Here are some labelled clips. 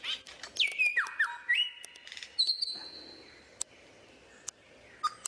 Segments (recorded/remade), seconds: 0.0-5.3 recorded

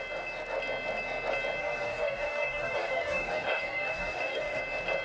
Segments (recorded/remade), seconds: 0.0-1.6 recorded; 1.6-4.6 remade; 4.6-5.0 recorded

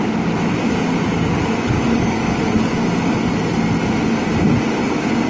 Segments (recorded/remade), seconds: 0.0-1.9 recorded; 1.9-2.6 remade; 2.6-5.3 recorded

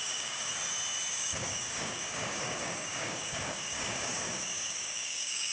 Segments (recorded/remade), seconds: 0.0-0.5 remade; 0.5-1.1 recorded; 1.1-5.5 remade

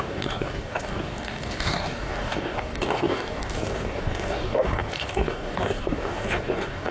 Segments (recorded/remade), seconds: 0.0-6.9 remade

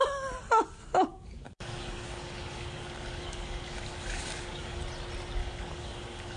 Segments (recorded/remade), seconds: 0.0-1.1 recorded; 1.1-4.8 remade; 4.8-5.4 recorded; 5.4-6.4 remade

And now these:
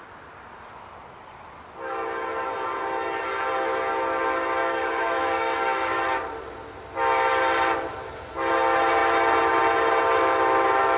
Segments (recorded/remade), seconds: 0.0-4.6 recorded; 4.6-6.0 remade; 6.0-11.0 recorded